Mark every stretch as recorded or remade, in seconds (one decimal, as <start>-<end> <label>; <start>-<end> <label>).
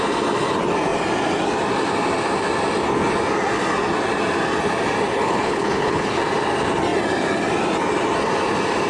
0.0-5.1 recorded; 5.1-6.2 remade; 6.2-8.9 recorded